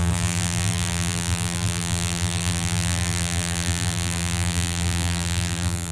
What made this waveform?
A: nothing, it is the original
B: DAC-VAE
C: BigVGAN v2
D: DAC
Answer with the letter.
C